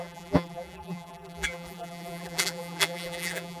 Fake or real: fake